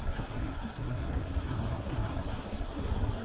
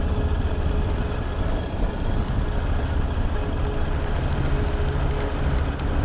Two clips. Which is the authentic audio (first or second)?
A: second